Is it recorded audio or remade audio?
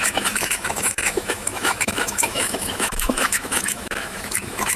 remade